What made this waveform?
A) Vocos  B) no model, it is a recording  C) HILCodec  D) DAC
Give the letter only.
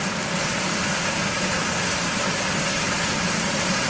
B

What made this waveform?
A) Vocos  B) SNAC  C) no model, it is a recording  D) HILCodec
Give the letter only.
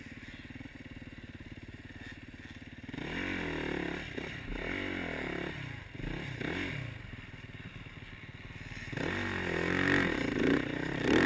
C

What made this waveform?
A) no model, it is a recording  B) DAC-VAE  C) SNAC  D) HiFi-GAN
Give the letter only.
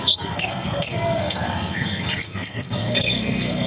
C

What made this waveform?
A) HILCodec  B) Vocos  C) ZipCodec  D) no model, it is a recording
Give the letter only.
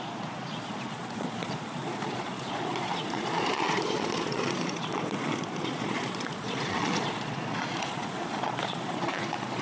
B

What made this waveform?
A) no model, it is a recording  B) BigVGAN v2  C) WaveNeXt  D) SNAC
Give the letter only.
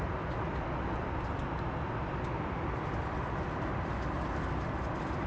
A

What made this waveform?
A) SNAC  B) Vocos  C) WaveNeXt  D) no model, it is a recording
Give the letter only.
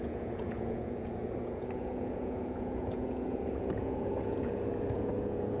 B